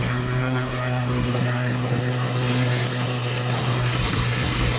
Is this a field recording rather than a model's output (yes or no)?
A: no